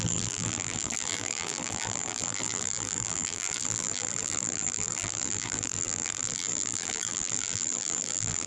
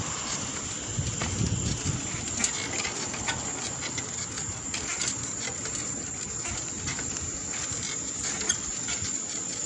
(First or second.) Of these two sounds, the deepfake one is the first